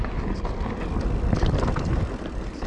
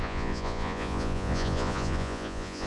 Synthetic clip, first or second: second